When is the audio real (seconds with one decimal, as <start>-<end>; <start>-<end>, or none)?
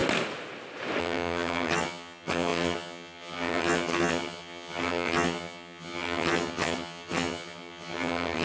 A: 0.0-1.0